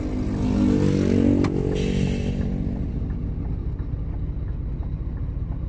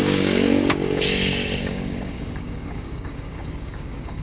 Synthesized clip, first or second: second